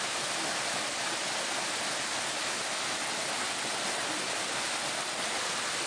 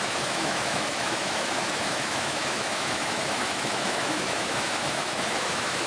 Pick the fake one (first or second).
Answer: second